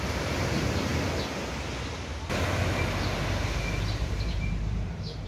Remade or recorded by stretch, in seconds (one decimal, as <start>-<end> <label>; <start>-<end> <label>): 0.0-0.9 remade; 0.9-4.1 recorded; 4.1-5.3 remade